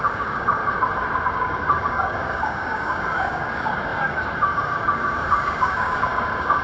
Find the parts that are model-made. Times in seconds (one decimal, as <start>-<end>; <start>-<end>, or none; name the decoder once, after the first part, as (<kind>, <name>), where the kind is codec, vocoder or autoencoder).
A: 0.0-0.6 (codec, DAC); 1.3-6.6